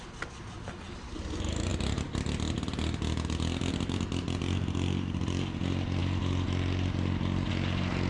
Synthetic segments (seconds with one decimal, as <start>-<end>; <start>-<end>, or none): none